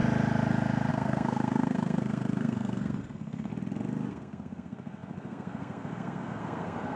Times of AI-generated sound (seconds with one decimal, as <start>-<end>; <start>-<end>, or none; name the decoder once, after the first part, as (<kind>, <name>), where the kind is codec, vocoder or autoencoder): 0.9-3.5 (codec, SNAC); 4.1-7.0